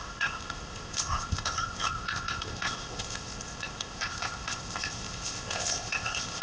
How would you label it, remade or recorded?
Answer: remade